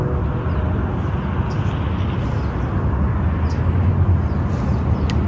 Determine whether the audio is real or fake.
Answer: real